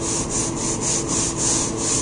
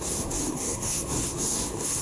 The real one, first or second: first